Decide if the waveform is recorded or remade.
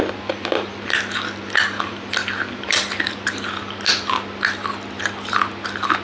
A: recorded